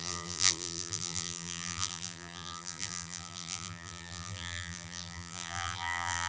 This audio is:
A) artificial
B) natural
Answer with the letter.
A